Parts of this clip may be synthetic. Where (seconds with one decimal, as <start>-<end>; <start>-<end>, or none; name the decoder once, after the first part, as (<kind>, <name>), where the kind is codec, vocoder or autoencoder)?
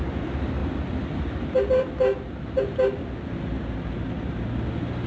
none